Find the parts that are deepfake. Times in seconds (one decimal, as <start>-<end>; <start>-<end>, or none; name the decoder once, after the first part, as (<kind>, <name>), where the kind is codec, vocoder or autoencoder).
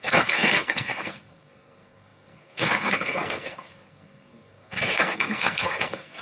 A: 0.0-6.2 (codec, SNAC)